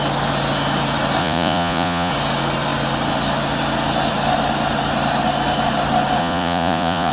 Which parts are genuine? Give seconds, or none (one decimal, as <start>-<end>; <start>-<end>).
0.0-1.2; 2.1-6.2

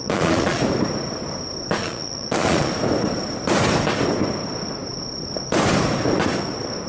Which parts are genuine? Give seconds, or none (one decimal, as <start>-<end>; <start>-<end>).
0.6-1.8; 2.7-6.9

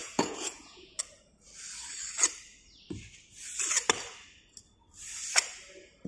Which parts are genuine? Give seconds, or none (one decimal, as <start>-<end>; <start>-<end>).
1.0-6.1

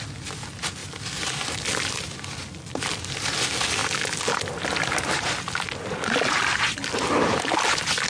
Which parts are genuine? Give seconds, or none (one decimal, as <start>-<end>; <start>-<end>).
0.0-8.1

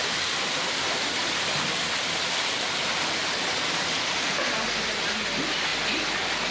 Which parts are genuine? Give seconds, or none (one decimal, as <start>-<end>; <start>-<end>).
0.0-6.5